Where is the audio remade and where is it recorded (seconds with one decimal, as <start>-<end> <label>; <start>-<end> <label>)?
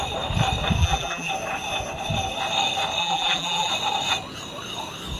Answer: 0.0-0.8 recorded; 0.8-1.3 remade; 1.3-3.0 recorded; 3.0-3.7 remade; 3.7-5.2 recorded